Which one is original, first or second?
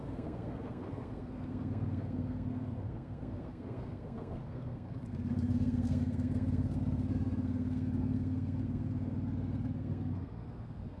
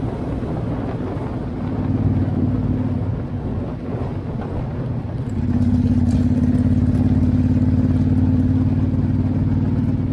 second